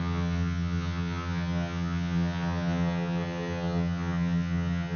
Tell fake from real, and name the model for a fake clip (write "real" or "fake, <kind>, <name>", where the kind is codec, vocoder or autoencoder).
fake, vocoder, HiFi-GAN